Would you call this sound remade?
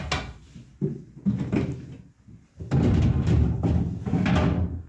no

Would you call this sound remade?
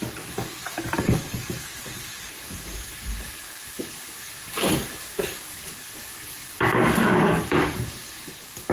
yes